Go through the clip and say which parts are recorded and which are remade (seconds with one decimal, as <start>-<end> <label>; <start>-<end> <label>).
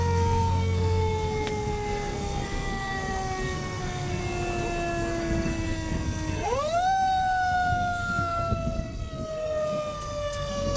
0.0-4.2 remade; 4.2-5.2 recorded; 5.2-10.8 remade